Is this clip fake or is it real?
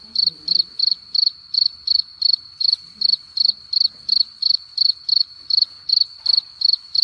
fake